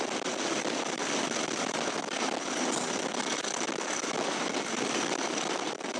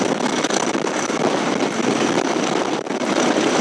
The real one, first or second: second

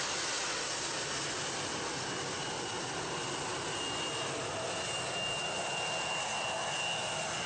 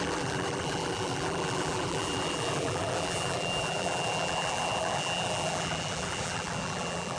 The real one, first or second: first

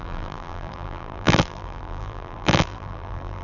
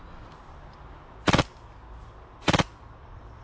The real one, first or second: second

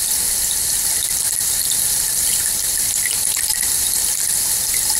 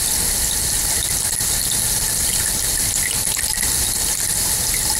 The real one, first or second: second